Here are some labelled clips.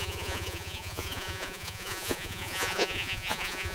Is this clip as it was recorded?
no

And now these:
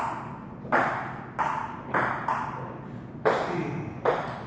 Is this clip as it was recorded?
yes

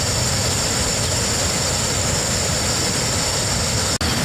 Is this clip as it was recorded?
yes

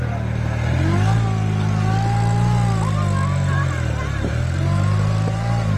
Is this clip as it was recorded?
yes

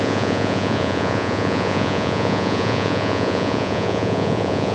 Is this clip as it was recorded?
no